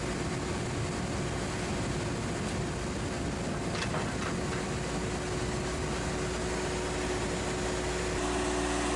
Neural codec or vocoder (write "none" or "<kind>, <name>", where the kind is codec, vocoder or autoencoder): none